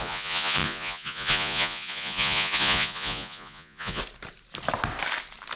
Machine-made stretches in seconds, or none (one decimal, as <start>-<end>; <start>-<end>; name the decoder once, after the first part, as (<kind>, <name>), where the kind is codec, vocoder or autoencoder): 0.0-4.0 (vocoder, Vocos)